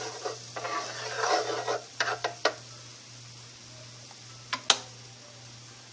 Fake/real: real